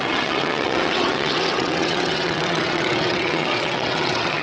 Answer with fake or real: fake